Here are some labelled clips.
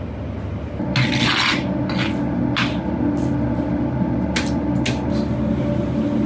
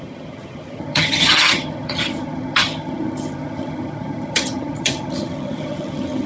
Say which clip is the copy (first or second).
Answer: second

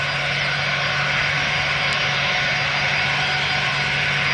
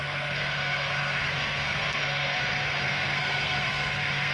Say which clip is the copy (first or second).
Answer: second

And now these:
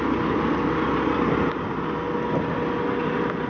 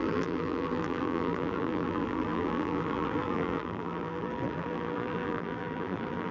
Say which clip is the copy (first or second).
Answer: second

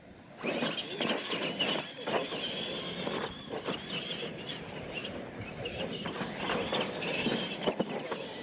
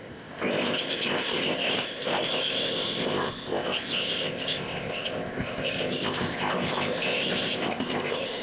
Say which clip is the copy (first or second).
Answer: second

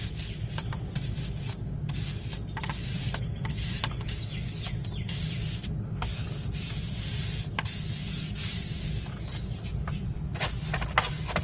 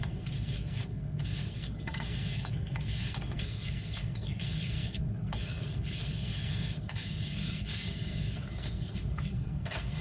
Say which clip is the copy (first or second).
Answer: second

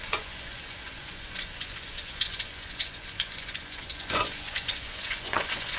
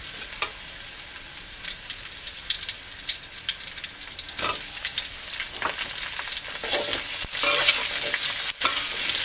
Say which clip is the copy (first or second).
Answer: first